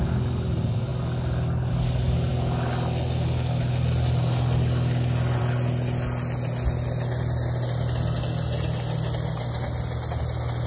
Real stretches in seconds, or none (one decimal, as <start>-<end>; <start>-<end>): 0.0-10.7